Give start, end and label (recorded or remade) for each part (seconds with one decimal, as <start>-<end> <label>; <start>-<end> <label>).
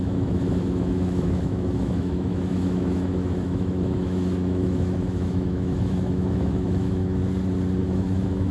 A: 0.0-7.2 remade; 7.2-7.8 recorded; 7.8-8.5 remade